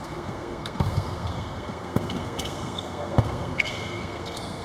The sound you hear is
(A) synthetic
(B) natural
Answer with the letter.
A